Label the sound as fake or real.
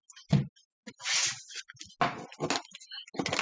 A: real